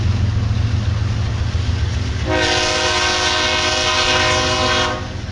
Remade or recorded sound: recorded